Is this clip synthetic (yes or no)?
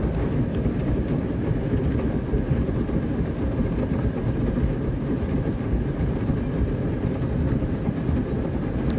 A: no